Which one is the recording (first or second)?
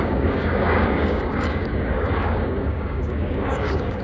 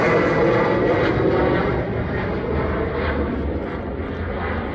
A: second